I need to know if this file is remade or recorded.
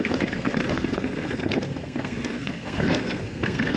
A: remade